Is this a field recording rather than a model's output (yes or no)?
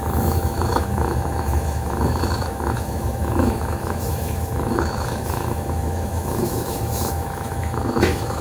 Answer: no